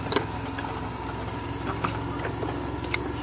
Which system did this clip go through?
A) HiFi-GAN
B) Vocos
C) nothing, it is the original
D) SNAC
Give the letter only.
C